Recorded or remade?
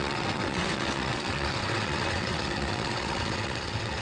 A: remade